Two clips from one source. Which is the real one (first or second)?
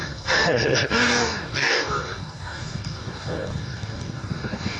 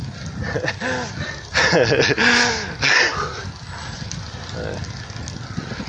second